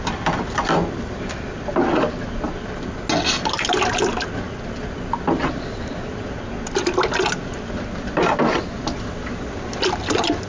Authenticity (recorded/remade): recorded